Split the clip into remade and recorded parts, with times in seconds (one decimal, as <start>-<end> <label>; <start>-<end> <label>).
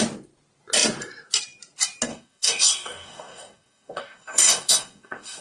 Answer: 0.0-2.1 recorded; 2.1-5.4 remade